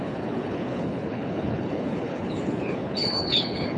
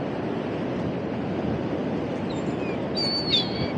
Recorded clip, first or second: second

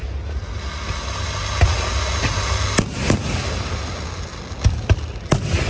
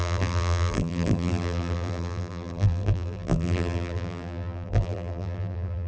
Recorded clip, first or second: first